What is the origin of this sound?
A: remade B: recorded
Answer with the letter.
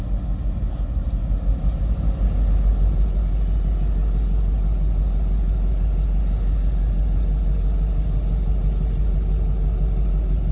B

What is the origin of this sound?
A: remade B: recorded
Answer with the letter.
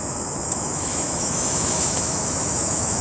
A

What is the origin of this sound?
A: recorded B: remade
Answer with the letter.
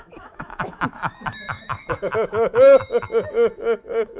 B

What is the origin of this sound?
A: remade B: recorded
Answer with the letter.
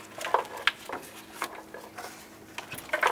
B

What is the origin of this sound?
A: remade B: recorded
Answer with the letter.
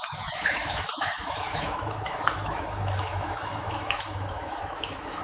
A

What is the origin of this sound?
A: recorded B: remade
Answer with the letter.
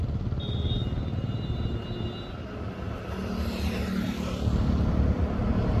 A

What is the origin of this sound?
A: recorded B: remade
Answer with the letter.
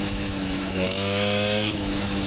B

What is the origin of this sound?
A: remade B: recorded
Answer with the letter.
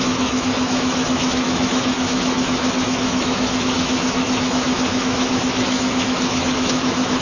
A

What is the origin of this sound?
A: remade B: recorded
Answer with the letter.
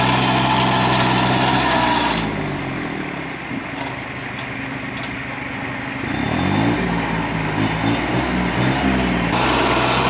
B